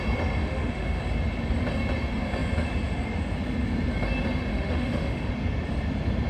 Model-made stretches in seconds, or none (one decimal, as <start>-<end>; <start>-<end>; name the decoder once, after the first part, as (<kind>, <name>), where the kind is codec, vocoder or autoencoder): 0.4-1.0 (autoencoder, DAC-VAE); 4.5-5.3